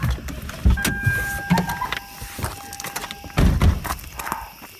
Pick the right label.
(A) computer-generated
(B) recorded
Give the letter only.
B